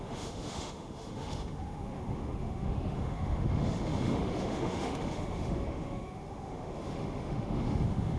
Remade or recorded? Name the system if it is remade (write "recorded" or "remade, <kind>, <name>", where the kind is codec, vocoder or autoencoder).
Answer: remade, autoencoder, DAC-VAE